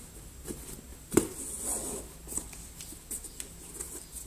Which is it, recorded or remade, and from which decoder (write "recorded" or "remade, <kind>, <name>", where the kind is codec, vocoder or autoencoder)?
recorded